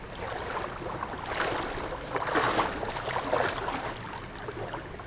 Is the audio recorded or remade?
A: recorded